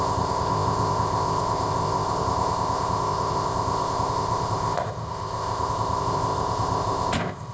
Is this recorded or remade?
remade